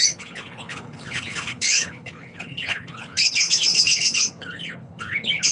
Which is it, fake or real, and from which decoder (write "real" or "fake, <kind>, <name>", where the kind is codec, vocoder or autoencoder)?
fake, codec, HILCodec